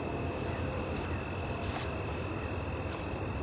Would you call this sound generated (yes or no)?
no